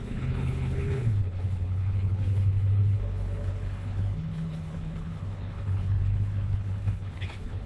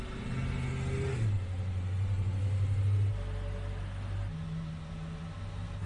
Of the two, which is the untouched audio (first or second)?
second